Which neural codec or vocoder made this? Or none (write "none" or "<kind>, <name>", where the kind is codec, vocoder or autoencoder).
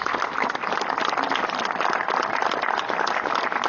none